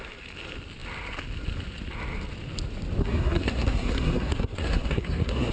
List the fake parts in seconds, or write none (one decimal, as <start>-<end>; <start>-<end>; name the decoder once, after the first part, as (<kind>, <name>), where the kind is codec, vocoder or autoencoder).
3.0-5.5 (codec, SNAC)